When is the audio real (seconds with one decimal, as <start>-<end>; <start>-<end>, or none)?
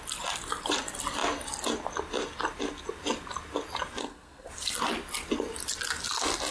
0.0-4.0; 4.5-6.5